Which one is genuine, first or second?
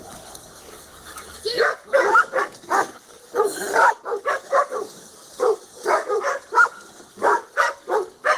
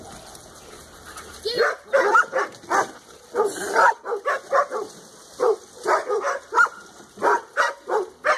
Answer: second